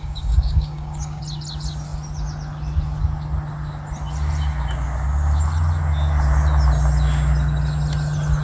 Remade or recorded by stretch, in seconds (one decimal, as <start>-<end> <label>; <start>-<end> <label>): 0.0-1.2 remade; 1.2-8.4 recorded

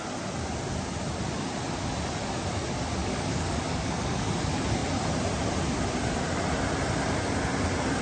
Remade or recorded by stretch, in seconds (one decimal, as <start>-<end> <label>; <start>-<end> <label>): 0.0-3.0 recorded; 3.0-4.3 remade; 4.3-8.0 recorded

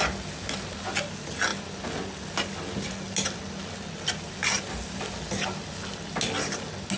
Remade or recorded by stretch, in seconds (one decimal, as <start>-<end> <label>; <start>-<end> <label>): 0.0-7.0 recorded

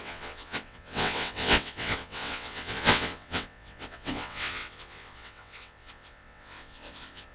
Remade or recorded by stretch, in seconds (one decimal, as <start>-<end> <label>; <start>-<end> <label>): 0.0-7.3 remade

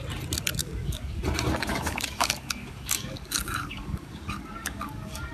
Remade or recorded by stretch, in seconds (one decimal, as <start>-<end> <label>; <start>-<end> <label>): 0.0-0.6 recorded; 0.6-1.2 remade; 1.2-1.7 recorded; 1.7-5.3 remade

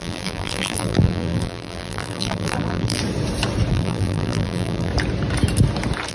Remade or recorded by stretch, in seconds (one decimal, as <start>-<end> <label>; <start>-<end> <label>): 0.0-3.0 remade; 3.0-3.7 recorded; 3.7-4.9 remade; 4.9-6.1 recorded

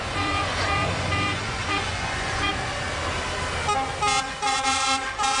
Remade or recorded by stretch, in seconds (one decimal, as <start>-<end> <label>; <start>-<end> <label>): 0.0-2.5 remade; 2.5-4.2 recorded; 4.2-5.4 remade